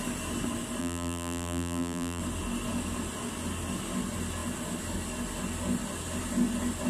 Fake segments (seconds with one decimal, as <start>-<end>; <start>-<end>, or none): 0.8-2.2